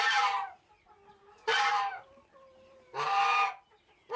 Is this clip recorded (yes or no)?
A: yes